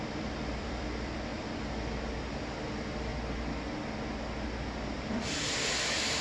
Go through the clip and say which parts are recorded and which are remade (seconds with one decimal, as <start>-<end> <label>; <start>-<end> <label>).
0.0-3.1 remade; 3.1-4.6 recorded; 4.6-6.2 remade